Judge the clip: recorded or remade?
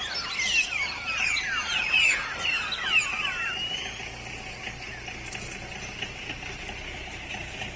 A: recorded